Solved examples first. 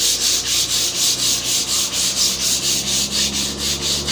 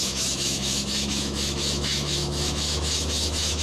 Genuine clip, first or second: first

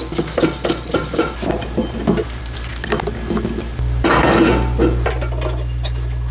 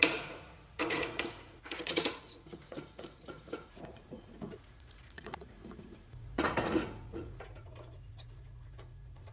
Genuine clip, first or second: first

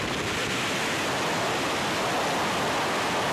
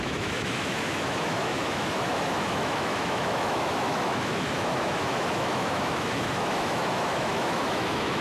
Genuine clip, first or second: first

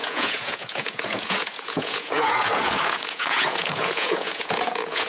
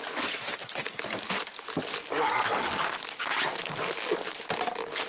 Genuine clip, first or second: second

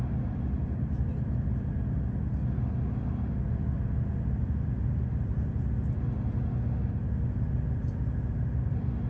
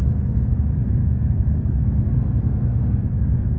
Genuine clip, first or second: first